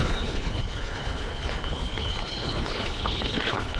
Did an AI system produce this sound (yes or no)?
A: yes